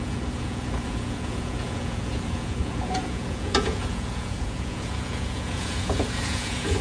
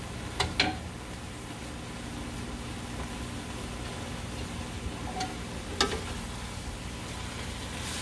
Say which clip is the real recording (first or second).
second